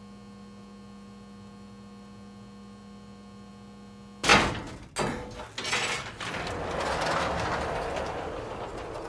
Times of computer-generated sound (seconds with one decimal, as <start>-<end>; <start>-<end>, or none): none